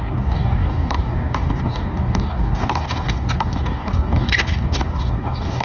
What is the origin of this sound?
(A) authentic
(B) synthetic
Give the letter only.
B